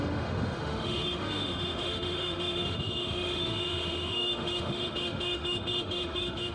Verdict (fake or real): fake